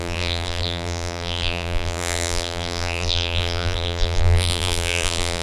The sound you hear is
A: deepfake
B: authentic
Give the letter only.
A